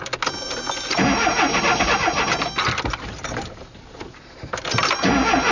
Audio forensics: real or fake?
real